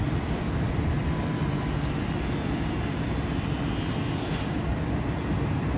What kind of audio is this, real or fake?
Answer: real